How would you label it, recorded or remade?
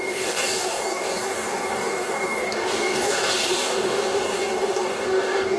remade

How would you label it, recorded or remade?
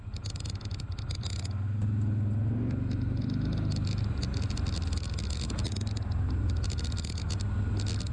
recorded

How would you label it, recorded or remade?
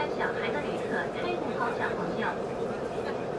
recorded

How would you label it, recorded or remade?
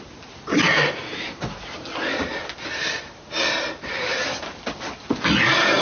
recorded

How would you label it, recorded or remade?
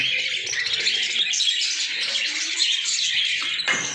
recorded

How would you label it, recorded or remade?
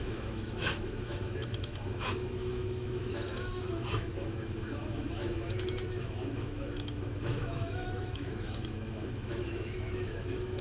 remade